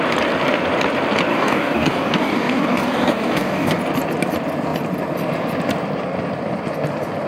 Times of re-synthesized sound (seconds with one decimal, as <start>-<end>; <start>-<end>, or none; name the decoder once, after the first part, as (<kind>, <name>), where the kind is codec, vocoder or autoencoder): 1.3-3.8 (codec, DAC)